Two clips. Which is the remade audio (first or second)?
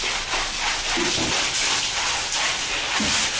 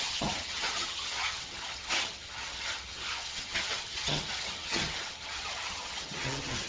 second